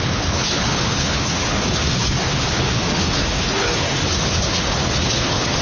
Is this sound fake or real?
fake